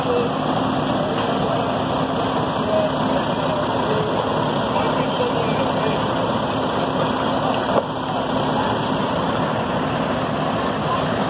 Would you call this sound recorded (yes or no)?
yes